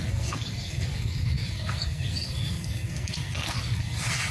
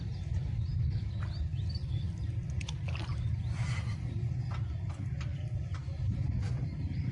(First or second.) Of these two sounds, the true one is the second